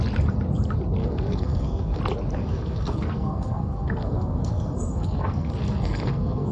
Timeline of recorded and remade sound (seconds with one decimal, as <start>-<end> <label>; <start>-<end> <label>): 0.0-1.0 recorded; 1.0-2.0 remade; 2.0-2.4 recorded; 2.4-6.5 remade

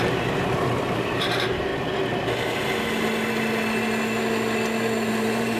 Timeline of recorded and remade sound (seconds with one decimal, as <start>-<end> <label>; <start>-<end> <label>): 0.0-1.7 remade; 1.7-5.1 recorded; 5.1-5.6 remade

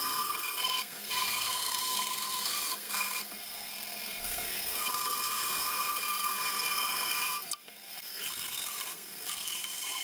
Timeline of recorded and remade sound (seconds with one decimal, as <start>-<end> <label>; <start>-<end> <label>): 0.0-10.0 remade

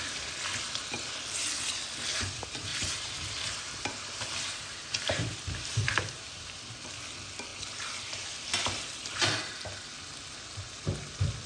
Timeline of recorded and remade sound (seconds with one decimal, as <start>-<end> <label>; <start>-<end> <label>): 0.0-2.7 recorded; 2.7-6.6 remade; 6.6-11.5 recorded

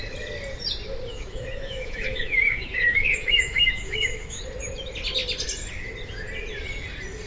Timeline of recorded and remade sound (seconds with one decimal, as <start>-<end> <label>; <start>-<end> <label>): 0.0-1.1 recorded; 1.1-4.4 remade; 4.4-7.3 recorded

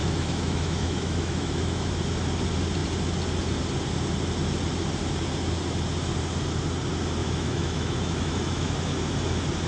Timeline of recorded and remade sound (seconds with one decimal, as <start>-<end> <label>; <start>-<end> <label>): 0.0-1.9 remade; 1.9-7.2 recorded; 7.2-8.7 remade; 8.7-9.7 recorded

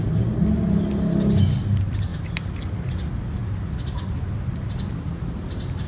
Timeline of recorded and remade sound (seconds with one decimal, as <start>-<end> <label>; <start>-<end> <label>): 0.0-5.9 recorded